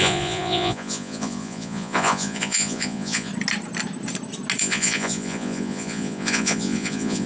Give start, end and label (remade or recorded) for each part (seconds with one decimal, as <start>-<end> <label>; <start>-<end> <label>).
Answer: 0.0-3.3 remade; 3.3-4.6 recorded; 4.6-7.3 remade